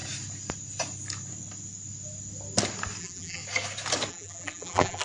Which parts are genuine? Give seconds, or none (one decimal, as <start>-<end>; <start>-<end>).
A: 0.0-3.0; 3.4-4.1